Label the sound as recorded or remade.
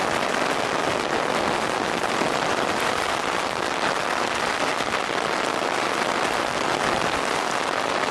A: recorded